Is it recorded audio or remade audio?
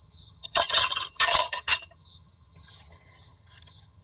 remade